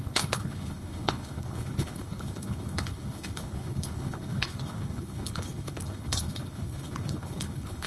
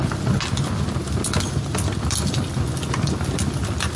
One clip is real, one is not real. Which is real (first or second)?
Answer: second